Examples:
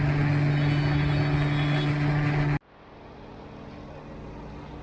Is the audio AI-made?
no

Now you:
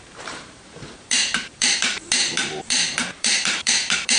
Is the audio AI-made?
yes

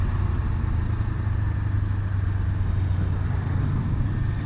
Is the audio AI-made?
no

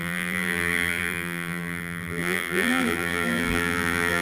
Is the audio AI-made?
yes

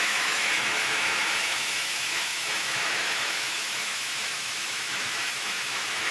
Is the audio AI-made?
yes